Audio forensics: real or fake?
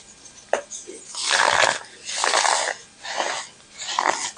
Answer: real